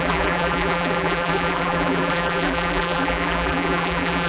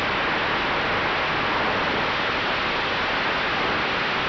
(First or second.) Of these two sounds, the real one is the second